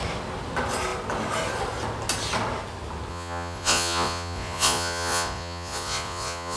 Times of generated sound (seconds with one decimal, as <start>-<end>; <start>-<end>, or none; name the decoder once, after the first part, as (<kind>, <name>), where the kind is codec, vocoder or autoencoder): 3.1-6.6 (vocoder, Vocos)